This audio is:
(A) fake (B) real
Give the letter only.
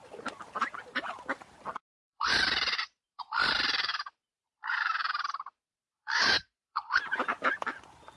A